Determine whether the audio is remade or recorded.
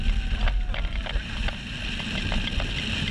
recorded